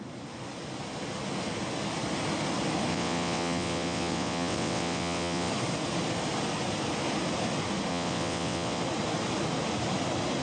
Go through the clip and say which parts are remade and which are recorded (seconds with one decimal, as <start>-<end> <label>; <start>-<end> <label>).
0.0-2.9 recorded; 2.9-5.5 remade; 5.5-7.9 recorded; 7.9-8.8 remade; 8.8-10.4 recorded